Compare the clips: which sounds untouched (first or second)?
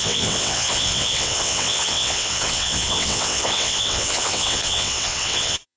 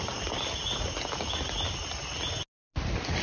second